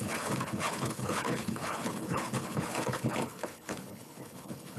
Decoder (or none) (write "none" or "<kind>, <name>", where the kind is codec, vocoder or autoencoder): codec, HILCodec